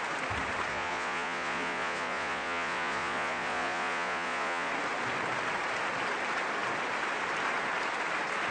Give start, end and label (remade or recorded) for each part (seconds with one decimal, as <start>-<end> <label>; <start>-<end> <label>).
0.0-0.7 recorded; 0.7-4.7 remade; 4.7-8.5 recorded